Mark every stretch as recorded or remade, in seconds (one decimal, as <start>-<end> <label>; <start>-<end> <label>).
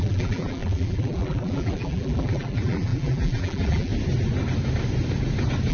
0.0-3.9 remade; 3.9-5.7 recorded